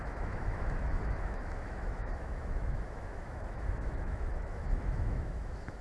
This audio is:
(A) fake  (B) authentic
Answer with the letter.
A